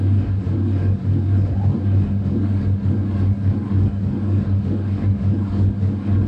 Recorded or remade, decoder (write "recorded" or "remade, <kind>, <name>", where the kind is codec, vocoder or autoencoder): remade, codec, DAC